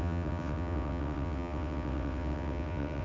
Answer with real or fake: fake